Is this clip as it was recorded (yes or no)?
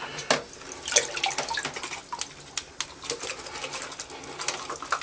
yes